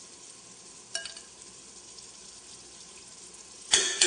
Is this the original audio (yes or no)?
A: no